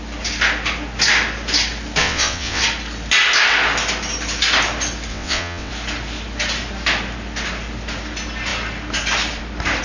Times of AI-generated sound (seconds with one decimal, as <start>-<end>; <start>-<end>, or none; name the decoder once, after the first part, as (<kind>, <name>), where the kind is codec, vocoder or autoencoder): 2.0-2.6 (vocoder, WaveNeXt); 5.1-5.7